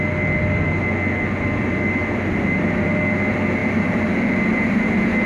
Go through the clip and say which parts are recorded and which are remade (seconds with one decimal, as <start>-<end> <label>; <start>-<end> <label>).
0.0-5.3 recorded